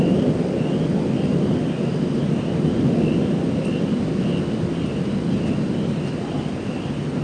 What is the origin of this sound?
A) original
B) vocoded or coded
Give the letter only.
A